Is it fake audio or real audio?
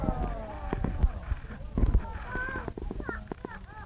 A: real